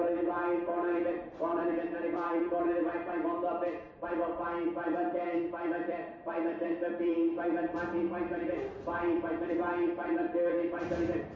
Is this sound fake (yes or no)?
yes